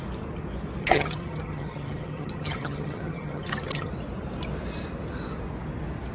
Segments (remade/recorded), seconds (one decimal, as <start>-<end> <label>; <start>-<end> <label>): 0.0-0.8 recorded; 0.8-3.9 remade; 3.9-6.1 recorded